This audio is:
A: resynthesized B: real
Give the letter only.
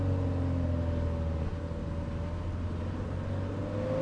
B